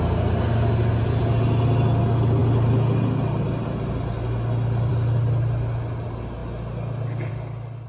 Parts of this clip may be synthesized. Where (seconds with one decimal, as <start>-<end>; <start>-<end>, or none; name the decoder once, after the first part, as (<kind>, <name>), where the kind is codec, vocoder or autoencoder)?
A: none